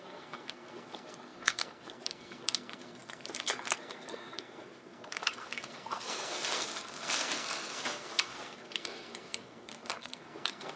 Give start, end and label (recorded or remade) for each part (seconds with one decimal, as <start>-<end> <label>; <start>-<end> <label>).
0.0-10.8 remade